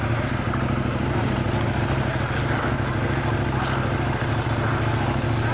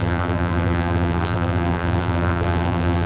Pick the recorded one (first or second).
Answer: first